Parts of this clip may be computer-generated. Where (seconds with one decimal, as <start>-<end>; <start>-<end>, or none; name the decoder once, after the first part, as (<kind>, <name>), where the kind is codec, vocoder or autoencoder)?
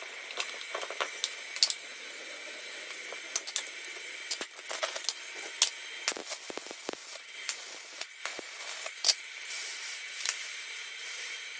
7.0-11.6 (vocoder, BigVGAN v2)